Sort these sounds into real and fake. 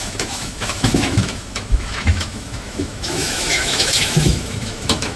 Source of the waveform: fake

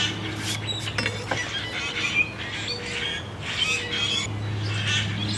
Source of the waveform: real